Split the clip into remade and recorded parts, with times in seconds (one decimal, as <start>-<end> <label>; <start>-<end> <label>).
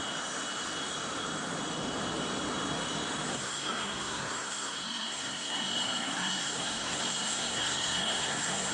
0.0-3.3 recorded; 3.3-8.7 remade